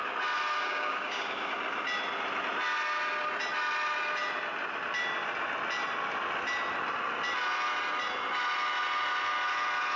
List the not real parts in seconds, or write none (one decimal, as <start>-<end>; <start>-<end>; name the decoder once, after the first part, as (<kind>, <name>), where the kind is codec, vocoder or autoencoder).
0.6-1.5 (codec, DAC)